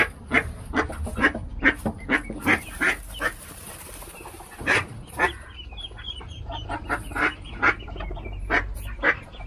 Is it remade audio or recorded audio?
remade